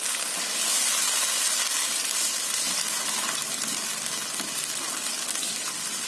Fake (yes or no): no